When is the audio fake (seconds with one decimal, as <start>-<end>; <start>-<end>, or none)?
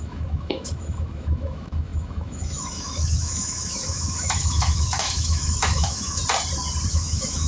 0.0-6.2; 6.9-7.5